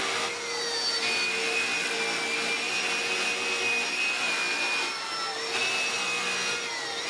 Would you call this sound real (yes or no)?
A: yes